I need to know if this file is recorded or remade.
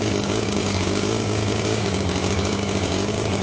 remade